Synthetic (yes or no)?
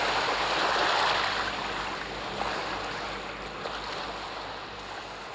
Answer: no